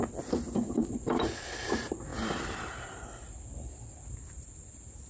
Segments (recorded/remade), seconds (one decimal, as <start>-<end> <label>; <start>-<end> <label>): 0.0-5.1 recorded